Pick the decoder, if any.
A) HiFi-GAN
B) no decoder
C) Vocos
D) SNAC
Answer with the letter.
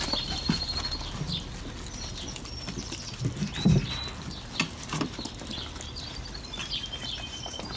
B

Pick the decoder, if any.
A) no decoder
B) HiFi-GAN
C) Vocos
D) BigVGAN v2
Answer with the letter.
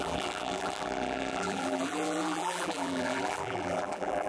D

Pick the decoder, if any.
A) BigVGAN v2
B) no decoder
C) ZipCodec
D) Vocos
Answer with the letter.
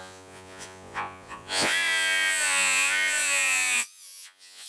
D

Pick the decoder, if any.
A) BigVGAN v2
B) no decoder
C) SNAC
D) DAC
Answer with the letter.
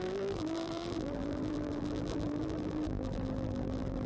A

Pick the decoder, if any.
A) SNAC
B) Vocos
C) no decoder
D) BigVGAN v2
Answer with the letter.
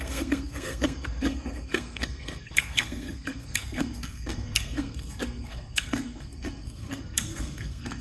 A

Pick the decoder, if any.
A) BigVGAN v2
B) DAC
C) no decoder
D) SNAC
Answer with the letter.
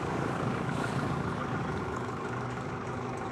B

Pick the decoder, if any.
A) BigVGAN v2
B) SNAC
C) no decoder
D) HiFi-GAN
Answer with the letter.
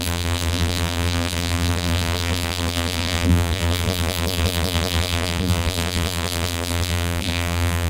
A